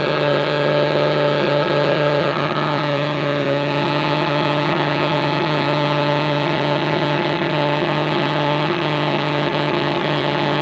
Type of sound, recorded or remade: remade